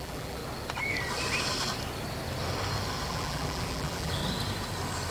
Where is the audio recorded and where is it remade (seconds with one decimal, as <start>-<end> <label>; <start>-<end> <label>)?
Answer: 0.0-0.4 remade; 0.4-3.1 recorded; 3.1-4.2 remade; 4.2-5.1 recorded